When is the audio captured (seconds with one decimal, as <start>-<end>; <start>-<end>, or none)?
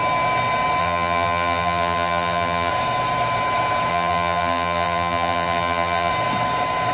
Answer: 0.0-0.8; 2.7-3.9; 6.1-6.9